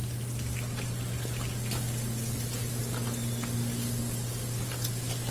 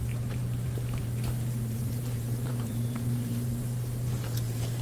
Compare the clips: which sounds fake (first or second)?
second